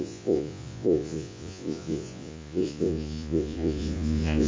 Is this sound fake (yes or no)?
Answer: yes